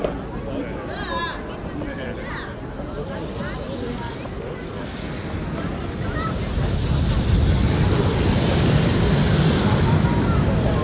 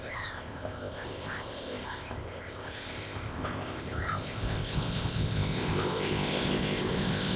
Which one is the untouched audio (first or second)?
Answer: first